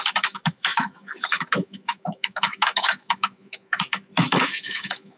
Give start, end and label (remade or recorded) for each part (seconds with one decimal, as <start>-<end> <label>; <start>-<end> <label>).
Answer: 0.0-5.2 remade